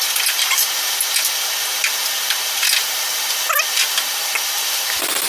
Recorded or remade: recorded